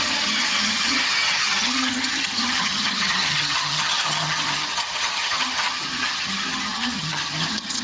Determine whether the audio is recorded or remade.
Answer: remade